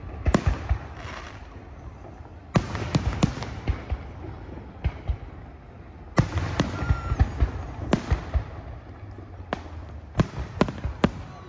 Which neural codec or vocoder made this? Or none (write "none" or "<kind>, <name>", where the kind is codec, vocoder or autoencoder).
none